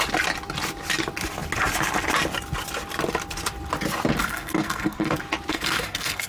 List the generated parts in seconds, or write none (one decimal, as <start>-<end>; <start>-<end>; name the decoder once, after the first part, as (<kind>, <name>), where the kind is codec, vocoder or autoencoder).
4.2-5.1 (codec, SNAC); 5.5-6.3